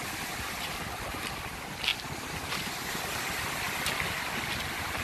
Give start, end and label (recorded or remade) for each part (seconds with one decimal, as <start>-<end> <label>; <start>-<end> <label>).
0.0-5.0 recorded

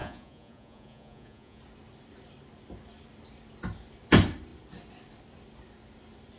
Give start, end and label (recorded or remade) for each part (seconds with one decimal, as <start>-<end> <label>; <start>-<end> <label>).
0.0-1.6 remade; 1.6-6.4 recorded

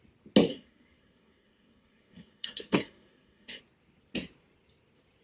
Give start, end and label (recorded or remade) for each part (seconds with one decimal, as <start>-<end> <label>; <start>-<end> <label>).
0.0-0.5 recorded; 0.5-3.6 remade; 3.6-5.2 recorded